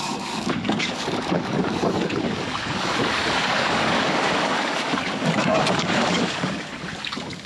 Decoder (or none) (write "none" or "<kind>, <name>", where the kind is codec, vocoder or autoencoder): codec, DAC